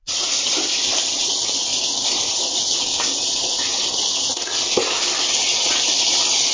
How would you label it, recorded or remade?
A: recorded